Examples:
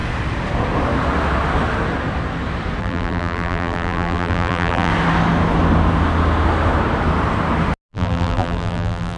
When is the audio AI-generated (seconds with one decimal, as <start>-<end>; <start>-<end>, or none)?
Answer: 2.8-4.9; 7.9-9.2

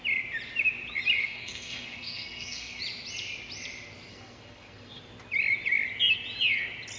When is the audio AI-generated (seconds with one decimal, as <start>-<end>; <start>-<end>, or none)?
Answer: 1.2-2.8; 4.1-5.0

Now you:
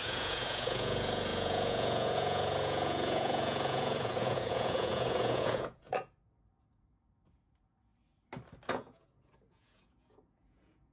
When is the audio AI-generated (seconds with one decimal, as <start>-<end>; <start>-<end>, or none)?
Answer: 0.0-7.9; 8.7-10.9

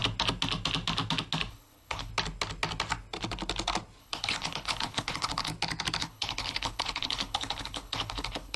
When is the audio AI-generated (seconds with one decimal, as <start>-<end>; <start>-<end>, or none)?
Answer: 1.5-2.1; 4.0-5.5; 6.0-8.6